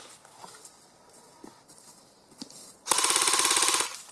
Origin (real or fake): real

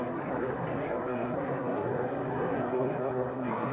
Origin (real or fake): fake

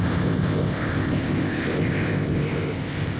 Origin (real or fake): fake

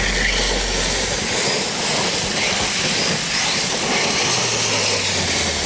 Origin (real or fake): real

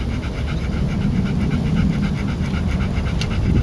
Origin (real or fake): real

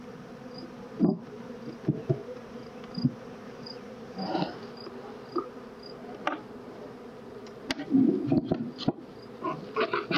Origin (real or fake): real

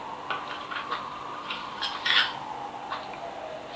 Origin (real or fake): real